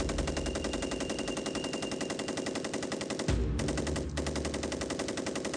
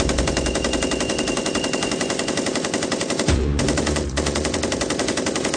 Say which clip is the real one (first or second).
first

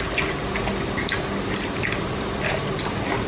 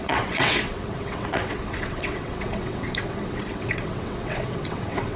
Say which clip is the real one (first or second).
first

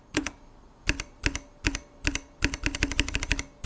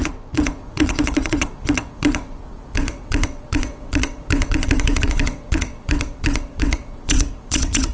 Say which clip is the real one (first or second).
first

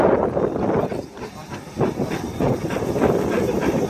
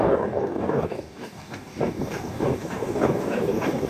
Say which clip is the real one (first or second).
first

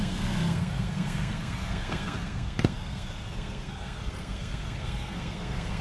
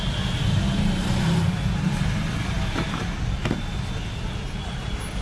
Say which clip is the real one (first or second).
second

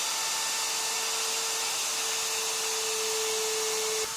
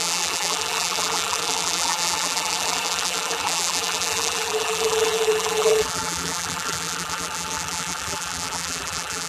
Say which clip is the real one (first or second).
first